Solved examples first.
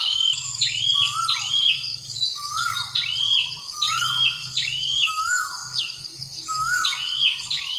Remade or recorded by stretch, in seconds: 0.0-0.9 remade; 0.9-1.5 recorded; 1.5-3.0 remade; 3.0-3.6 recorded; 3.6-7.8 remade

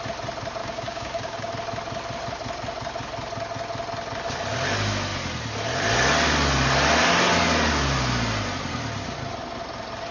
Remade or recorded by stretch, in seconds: 0.0-0.6 recorded; 0.6-1.5 remade; 1.5-10.1 recorded

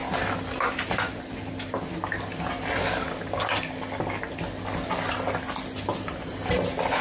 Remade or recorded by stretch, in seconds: 0.0-2.8 recorded; 2.8-4.2 remade; 4.2-7.0 recorded

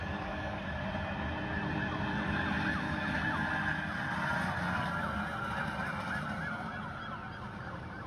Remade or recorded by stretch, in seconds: 0.0-0.6 remade; 0.6-8.1 recorded

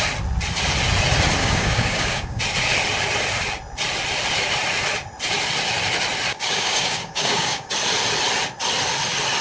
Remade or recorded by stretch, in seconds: 0.0-1.4 recorded; 1.4-2.4 remade; 2.4-6.3 recorded; 6.3-7.7 remade; 7.7-9.4 recorded